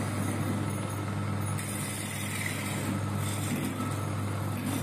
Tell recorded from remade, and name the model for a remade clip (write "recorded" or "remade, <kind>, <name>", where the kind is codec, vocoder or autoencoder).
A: recorded